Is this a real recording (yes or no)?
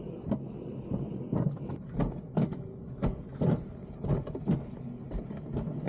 yes